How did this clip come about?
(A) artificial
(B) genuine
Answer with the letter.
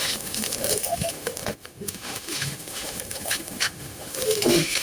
A